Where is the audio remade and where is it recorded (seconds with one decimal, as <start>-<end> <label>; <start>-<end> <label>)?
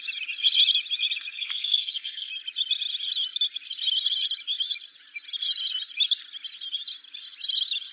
0.0-1.3 recorded; 1.3-2.3 remade; 2.3-7.9 recorded